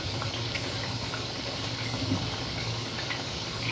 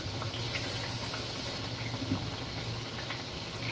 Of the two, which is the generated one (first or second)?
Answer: first